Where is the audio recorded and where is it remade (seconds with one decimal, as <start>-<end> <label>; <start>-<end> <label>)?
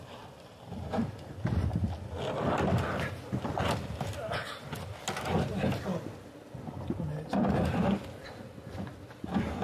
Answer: 0.0-9.6 recorded